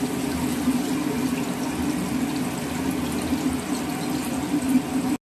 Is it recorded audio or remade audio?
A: recorded